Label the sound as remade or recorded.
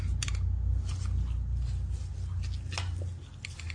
recorded